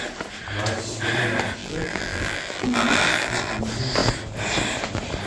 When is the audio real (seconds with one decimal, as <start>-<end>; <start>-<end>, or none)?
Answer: 0.0-1.6; 3.6-5.3